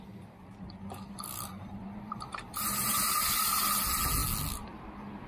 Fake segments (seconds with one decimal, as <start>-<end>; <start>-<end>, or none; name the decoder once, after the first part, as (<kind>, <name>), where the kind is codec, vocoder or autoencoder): 1.5-3.2 (vocoder, BigVGAN v2)

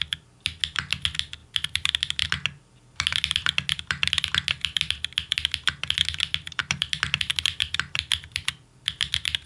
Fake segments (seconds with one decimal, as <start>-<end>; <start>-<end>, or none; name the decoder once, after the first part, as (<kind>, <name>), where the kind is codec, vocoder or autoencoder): 1.4-2.2 (vocoder, BigVGAN v2); 6.6-9.1

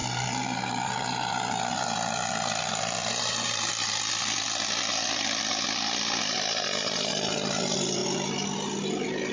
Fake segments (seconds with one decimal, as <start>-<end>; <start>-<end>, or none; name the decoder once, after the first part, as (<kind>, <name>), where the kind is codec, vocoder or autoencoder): 3.0-3.7 (vocoder, BigVGAN v2)

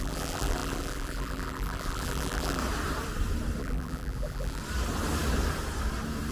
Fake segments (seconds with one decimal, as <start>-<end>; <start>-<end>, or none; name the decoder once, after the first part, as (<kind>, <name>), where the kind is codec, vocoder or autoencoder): 0.0-2.6 (vocoder, BigVGAN v2); 3.6-4.6

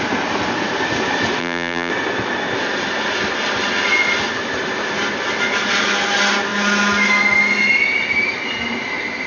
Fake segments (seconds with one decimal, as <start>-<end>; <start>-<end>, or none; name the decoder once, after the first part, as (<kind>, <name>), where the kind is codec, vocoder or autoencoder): 1.4-1.9 (vocoder, BigVGAN v2)

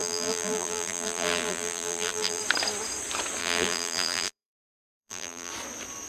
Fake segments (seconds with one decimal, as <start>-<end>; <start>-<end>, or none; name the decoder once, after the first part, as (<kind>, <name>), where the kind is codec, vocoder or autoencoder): 0.0-2.4 (vocoder, BigVGAN v2); 3.4-5.5